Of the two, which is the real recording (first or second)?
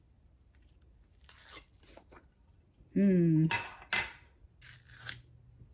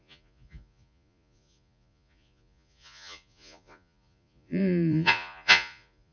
first